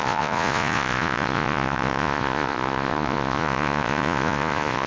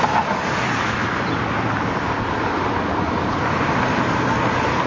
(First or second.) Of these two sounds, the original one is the second